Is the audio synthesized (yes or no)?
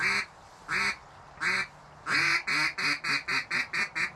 no